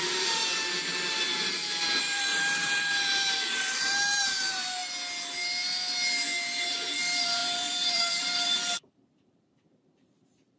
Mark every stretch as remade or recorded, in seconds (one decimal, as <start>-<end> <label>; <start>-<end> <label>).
0.0-0.4 remade; 0.4-2.0 recorded; 2.0-4.8 remade; 4.8-6.7 recorded; 6.7-10.6 remade